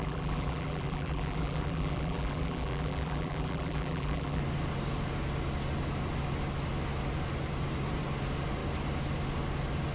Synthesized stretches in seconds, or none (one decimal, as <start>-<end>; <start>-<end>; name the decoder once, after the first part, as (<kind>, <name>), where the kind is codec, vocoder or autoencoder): 0.0-4.4 (vocoder, BigVGAN v2)